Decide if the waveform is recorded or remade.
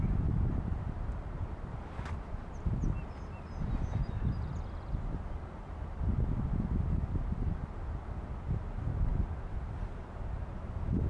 recorded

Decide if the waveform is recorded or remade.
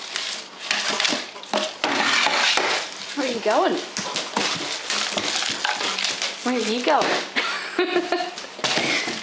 recorded